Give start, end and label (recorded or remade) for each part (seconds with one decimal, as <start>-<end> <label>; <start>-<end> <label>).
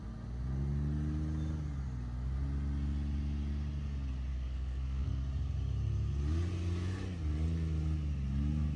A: 0.0-4.3 recorded; 4.3-5.2 remade; 5.2-8.8 recorded